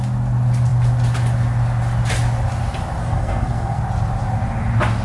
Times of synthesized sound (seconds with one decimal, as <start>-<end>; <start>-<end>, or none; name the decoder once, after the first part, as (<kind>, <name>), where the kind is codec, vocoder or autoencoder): 3.0-3.8 (codec, SNAC)